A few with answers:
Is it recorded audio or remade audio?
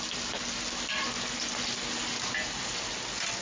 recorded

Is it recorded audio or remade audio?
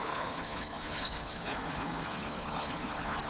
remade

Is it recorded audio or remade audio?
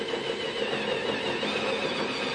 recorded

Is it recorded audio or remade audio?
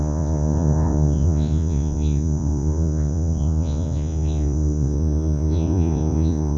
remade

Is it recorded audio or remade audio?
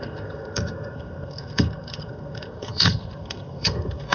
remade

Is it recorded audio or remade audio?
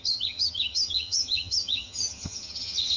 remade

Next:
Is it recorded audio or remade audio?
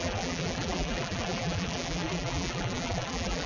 remade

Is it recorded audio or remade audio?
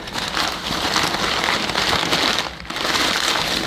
recorded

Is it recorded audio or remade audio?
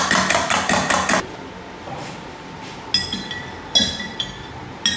recorded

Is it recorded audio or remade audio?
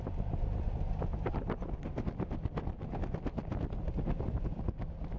remade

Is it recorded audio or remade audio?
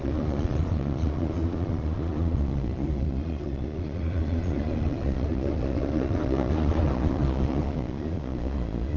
remade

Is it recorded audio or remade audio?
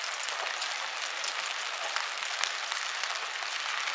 recorded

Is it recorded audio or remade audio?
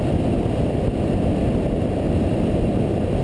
recorded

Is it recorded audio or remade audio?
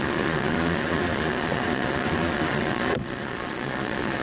remade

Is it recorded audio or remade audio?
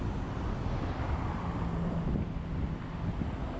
recorded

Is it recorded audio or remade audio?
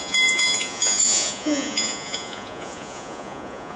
remade